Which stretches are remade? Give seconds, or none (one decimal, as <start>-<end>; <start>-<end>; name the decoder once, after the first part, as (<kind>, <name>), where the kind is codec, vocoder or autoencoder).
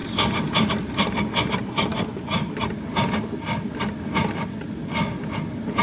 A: none